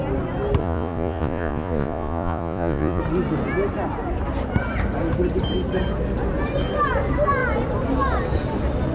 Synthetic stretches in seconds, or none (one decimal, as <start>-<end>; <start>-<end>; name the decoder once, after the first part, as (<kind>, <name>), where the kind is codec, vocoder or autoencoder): 0.6-3.0 (vocoder, Vocos)